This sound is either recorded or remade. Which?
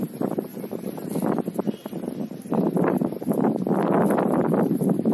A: recorded